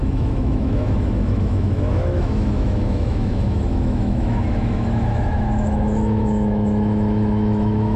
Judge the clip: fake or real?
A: fake